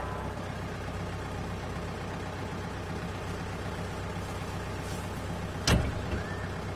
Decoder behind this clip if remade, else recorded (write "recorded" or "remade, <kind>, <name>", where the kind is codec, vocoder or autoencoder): recorded